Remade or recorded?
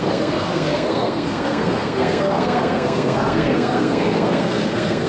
remade